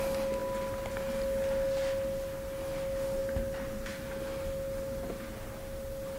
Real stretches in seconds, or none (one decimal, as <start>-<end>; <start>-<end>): 0.0-6.2